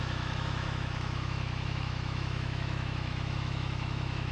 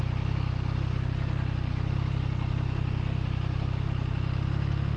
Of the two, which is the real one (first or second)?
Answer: second